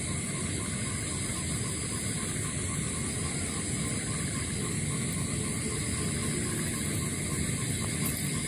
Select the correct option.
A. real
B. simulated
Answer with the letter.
A